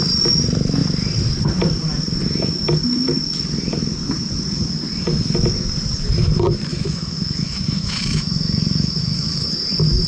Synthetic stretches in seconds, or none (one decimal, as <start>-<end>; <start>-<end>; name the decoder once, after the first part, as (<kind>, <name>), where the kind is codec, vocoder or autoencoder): 6.7-9.5 (autoencoder, DAC-VAE)